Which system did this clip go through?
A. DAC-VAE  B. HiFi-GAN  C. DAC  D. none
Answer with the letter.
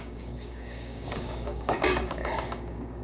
C